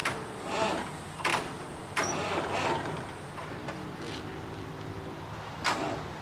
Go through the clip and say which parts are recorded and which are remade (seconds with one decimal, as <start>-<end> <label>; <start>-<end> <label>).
0.0-0.8 remade; 0.8-1.3 recorded; 1.3-3.8 remade; 3.8-6.2 recorded